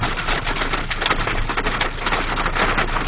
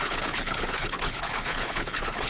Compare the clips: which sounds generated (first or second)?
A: second